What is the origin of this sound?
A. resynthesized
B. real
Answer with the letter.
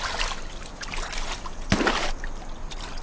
B